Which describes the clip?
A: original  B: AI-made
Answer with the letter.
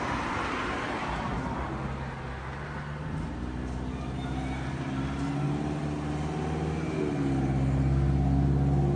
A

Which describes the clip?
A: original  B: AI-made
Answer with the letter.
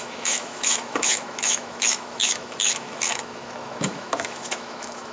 B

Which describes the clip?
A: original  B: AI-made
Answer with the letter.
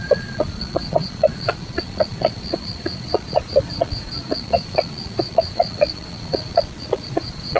B